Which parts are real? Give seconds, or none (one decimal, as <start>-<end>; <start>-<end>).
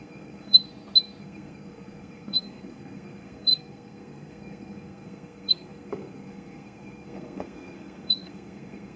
0.6-1.2